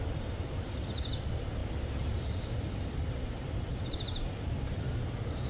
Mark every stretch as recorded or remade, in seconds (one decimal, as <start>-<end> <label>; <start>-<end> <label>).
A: 0.0-5.5 recorded